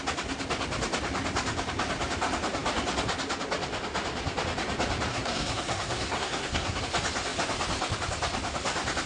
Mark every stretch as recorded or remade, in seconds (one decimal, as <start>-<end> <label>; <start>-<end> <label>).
0.0-5.1 recorded; 5.1-6.8 remade; 6.8-9.1 recorded